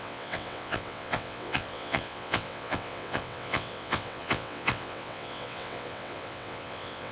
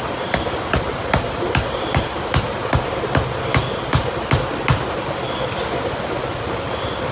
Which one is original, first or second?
second